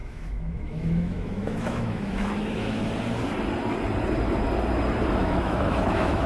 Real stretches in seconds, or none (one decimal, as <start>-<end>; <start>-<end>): 2.8-5.2